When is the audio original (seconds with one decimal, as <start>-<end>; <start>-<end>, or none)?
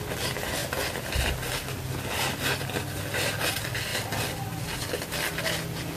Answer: 0.0-6.0